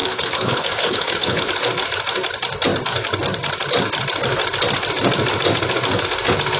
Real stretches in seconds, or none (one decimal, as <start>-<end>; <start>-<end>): 1.4-6.6